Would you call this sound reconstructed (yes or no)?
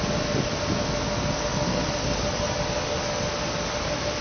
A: no